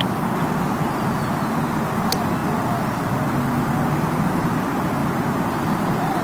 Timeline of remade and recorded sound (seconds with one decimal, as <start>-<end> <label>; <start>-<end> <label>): 0.0-6.2 recorded